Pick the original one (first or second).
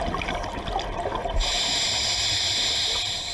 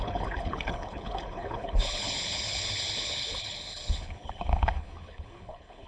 first